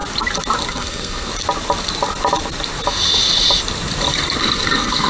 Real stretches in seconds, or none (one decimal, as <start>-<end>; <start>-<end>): 0.0-0.7; 1.3-4.4